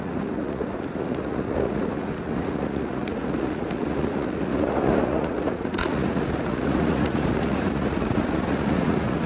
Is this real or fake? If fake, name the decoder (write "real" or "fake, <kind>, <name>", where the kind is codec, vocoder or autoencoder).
fake, vocoder, Vocos